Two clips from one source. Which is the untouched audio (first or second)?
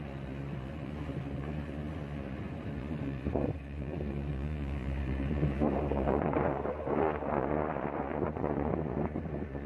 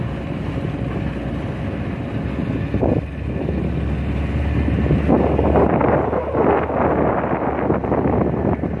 second